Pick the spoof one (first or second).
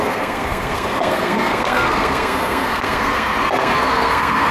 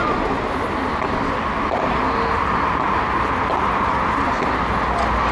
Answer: first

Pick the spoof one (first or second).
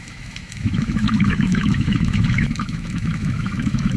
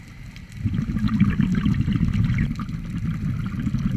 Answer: first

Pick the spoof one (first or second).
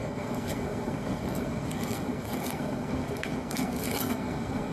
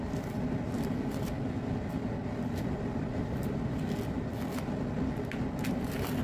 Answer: first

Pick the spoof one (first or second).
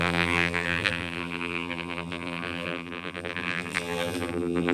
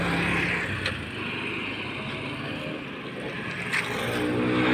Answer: first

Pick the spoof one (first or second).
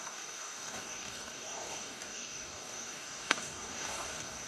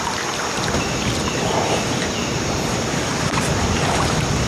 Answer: first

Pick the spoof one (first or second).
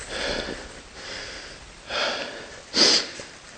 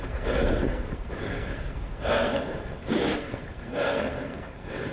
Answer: second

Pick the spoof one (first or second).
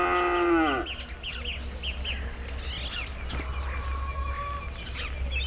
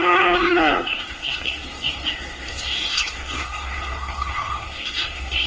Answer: second